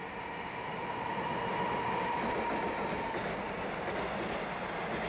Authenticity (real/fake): real